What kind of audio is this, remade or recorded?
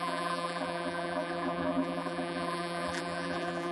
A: remade